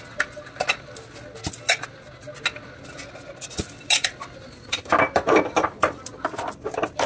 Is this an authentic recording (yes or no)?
yes